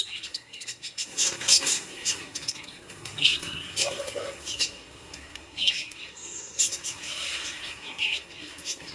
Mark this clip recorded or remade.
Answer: remade